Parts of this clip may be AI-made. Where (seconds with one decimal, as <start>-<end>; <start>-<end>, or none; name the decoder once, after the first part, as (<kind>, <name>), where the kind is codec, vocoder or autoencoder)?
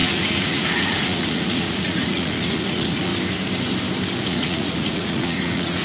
0.0-3.1 (vocoder, Vocos); 4.2-5.8